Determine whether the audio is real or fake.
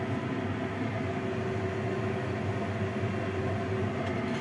real